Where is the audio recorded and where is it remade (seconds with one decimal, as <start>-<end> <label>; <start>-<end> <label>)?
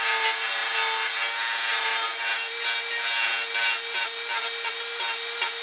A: 0.0-5.6 recorded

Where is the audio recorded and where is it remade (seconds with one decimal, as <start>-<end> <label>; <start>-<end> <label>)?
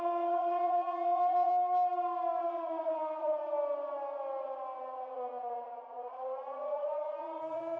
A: 0.0-1.5 remade; 1.5-2.4 recorded; 2.4-3.4 remade; 3.4-4.8 recorded; 4.8-7.8 remade